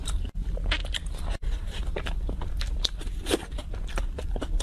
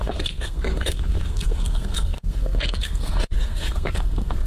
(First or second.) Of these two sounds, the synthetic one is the second